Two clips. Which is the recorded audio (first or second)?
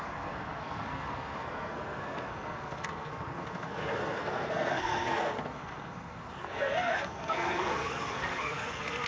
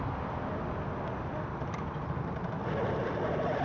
second